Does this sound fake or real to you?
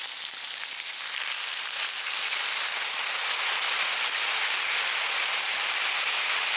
fake